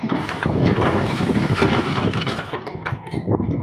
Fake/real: fake